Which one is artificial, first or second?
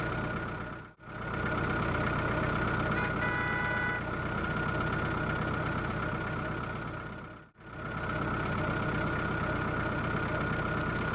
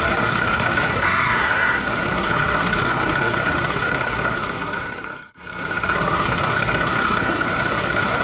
second